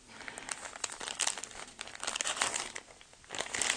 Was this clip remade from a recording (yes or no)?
no